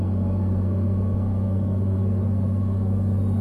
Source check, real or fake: fake